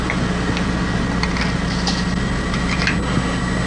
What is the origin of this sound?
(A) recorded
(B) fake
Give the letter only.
A